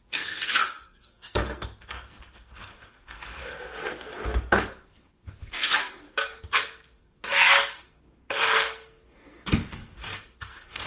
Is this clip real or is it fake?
fake